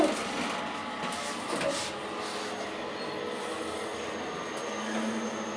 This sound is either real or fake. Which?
real